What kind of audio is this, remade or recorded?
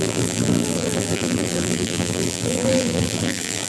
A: remade